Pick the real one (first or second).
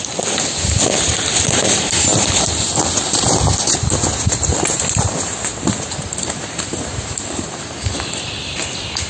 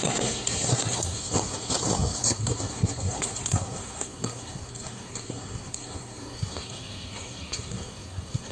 first